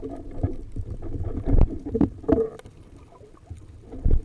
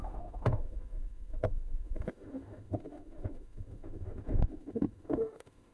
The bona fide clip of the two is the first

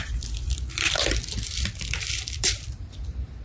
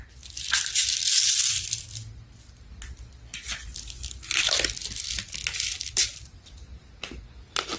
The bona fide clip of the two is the second